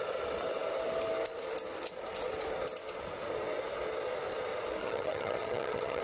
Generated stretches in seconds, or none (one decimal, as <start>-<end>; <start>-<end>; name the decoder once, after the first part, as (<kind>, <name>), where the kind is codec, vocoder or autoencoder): 4.8-6.0 (vocoder, HiFi-GAN)